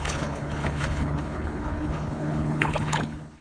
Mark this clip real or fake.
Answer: fake